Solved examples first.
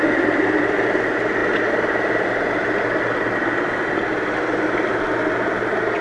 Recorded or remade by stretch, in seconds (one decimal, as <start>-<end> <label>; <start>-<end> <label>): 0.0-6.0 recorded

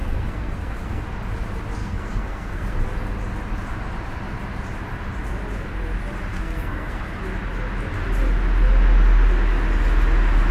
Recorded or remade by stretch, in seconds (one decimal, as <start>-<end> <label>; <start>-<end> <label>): 0.0-1.0 remade; 1.0-1.8 recorded; 1.8-2.8 remade; 2.8-6.3 recorded; 6.3-7.2 remade; 7.2-10.5 recorded

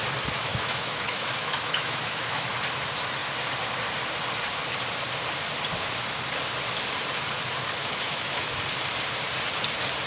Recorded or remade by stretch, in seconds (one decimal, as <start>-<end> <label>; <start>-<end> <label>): 0.0-0.5 recorded; 0.5-2.5 remade; 2.5-7.8 recorded; 7.8-8.6 remade; 8.6-10.1 recorded

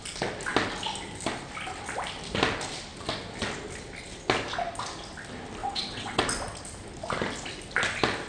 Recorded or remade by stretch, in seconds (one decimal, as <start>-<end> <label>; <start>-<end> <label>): 0.0-5.6 recorded; 5.6-6.2 remade; 6.2-8.3 recorded

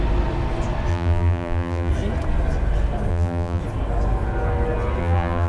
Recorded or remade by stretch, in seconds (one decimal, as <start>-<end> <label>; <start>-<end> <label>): 0.0-0.9 recorded; 0.9-1.9 remade; 1.9-3.1 recorded; 3.1-3.6 remade; 3.6-5.0 recorded; 5.0-5.5 remade

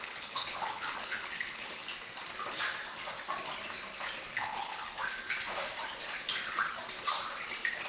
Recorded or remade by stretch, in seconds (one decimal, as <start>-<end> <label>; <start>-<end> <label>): 0.0-1.8 remade; 1.8-4.3 recorded; 4.3-5.0 remade; 5.0-7.9 recorded

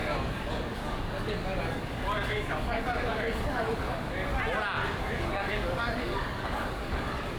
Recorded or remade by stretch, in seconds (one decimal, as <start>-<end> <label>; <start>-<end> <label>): 0.0-4.3 remade; 4.3-5.0 recorded; 5.0-7.4 remade

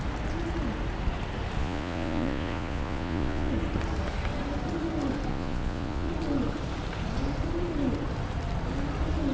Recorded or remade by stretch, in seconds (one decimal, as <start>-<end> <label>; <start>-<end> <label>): 0.0-1.6 recorded; 1.6-3.5 remade; 3.5-5.3 recorded; 5.3-6.1 remade; 6.1-9.3 recorded